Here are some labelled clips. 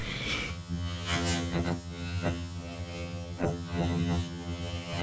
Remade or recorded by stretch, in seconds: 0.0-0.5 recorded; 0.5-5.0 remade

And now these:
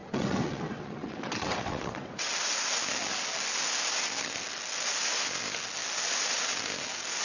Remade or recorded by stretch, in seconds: 0.0-2.3 remade; 2.3-7.2 recorded

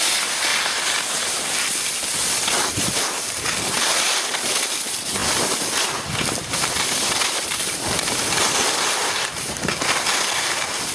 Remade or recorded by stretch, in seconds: 0.0-10.9 recorded

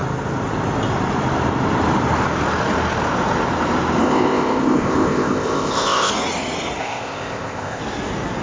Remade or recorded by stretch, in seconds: 0.0-4.0 recorded; 4.0-6.1 remade; 6.1-6.8 recorded; 6.8-7.8 remade; 7.8-8.4 recorded

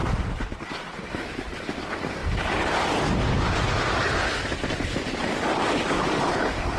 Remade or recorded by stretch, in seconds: 0.0-6.8 recorded

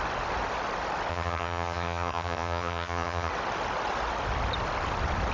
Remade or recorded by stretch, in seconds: 0.0-1.1 recorded; 1.1-3.3 remade; 3.3-5.3 recorded